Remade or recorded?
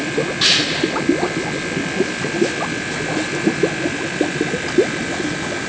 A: recorded